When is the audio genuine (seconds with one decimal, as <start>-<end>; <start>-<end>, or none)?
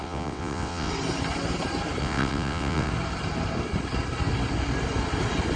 0.9-2.0; 2.9-5.6